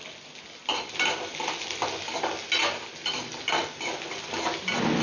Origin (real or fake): real